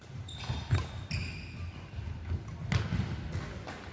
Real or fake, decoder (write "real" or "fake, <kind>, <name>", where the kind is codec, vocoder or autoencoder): real